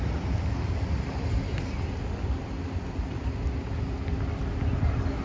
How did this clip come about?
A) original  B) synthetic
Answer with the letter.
A